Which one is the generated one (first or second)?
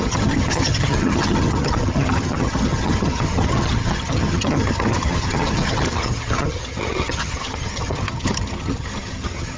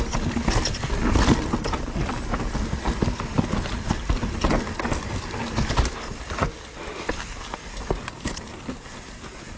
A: first